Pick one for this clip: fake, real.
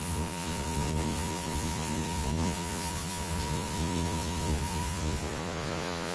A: fake